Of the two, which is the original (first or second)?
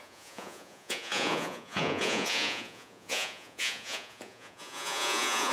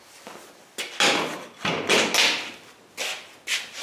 second